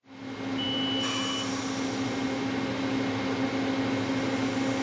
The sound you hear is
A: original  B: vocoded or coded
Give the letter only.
A